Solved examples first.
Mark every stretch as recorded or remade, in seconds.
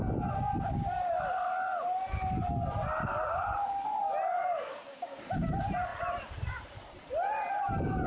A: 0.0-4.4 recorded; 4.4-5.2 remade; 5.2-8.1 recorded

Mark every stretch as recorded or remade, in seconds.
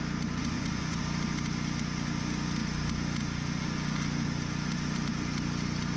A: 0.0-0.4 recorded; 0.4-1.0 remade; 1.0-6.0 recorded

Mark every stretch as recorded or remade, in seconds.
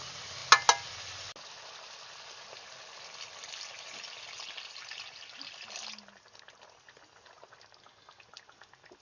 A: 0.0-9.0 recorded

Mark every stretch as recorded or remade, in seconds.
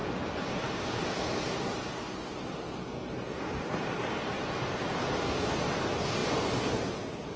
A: 0.0-4.4 recorded; 4.4-6.2 remade; 6.2-6.7 recorded; 6.7-7.4 remade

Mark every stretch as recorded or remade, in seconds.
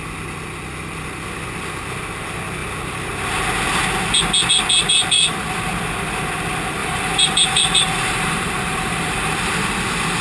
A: 0.0-6.8 recorded; 6.8-9.3 remade; 9.3-10.2 recorded